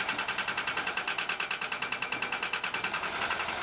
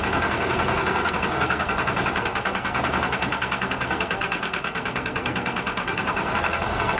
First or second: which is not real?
second